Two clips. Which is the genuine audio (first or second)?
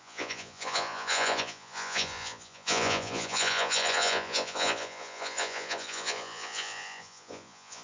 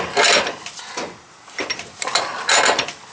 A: second